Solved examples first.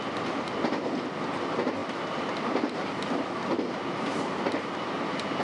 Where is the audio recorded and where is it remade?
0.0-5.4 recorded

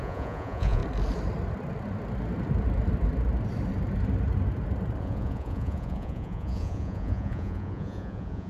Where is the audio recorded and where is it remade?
0.0-0.8 remade; 0.8-5.0 recorded; 5.0-8.5 remade

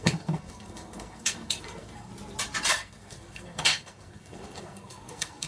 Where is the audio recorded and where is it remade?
0.0-2.1 remade; 2.1-2.7 recorded; 2.7-5.5 remade